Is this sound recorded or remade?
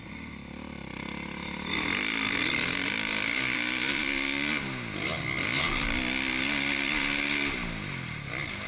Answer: recorded